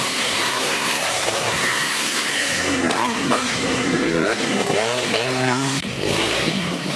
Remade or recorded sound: remade